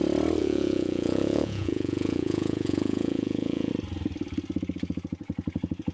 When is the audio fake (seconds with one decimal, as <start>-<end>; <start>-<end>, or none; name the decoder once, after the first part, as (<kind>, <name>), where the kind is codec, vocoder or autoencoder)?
0.4-3.7 (vocoder, Vocos)